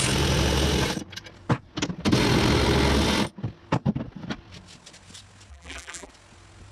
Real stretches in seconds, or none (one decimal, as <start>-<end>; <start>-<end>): 0.0-5.5; 6.1-6.7